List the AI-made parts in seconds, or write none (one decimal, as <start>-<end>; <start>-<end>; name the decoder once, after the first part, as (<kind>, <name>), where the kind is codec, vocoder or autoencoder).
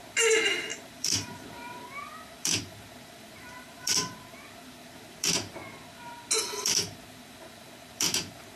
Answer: 0.0-5.6 (vocoder, BigVGAN v2); 6.4-8.6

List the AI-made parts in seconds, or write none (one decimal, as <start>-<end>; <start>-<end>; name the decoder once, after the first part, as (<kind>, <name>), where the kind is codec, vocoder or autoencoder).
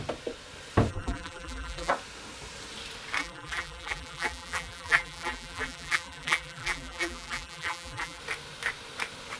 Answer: 0.9-1.9 (vocoder, BigVGAN v2); 3.2-8.2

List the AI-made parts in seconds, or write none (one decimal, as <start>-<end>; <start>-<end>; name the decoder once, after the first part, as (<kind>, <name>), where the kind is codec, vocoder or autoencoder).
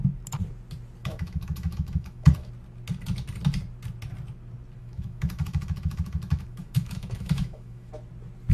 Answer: 1.0-2.5 (autoencoder, DAC-VAE); 4.8-7.9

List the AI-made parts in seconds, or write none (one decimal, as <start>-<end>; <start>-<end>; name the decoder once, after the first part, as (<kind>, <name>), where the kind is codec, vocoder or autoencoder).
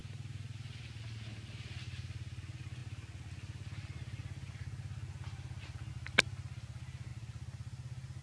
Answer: none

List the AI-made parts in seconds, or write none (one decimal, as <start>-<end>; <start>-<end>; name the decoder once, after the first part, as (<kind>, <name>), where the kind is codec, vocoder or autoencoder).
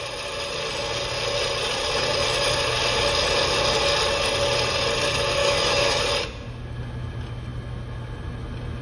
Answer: 5.4-6.0 (autoencoder, DAC-VAE)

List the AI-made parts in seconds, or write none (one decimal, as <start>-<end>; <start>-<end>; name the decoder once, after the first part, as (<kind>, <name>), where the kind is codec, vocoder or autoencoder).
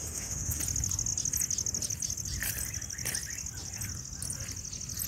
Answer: 0.0-0.6 (autoencoder, DAC-VAE)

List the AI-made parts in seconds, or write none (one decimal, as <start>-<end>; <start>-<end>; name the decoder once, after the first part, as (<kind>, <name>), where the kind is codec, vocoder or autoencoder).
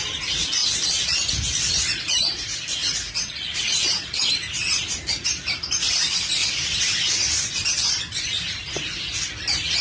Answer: 0.0-0.6 (vocoder, BigVGAN v2); 1.3-6.4; 7.1-9.8